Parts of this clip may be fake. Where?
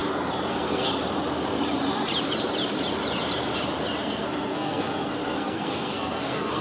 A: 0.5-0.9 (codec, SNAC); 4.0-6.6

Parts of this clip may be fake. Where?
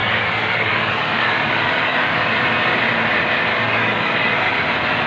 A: 0.0-2.4 (codec, DAC); 3.5-4.5